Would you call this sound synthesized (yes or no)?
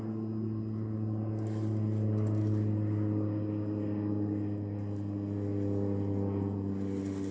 no